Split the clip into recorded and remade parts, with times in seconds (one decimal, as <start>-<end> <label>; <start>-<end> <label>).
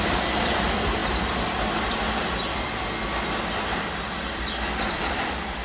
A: 0.0-1.0 remade; 1.0-4.4 recorded; 4.4-5.6 remade